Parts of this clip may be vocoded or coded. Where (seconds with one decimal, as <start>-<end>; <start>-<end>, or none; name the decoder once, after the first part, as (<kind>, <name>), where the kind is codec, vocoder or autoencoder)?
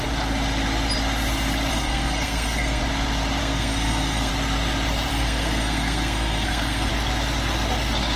1.7-2.8 (codec, SNAC); 3.4-4.3; 5.1-6.9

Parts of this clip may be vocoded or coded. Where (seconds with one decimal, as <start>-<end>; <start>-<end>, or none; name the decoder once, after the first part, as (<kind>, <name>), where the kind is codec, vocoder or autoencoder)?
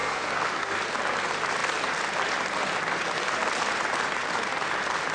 0.0-0.8 (codec, SNAC)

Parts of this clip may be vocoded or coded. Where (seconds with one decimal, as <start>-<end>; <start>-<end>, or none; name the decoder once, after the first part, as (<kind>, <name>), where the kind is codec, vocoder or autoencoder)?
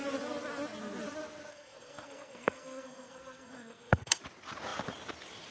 1.5-4.2 (codec, SNAC)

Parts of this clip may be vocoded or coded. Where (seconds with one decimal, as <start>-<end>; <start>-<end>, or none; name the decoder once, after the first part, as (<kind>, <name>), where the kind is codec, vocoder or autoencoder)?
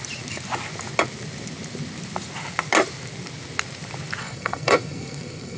4.2-5.6 (codec, SNAC)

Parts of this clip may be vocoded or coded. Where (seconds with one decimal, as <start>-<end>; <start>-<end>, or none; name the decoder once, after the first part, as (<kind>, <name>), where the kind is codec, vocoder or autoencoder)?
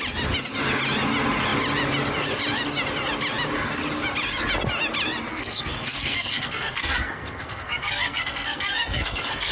5.3-9.5 (codec, SNAC)